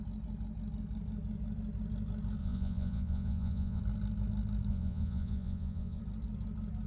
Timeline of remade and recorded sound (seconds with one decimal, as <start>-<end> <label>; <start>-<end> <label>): 0.0-2.4 recorded; 2.4-3.8 remade; 3.8-4.7 recorded; 4.7-6.0 remade; 6.0-6.9 recorded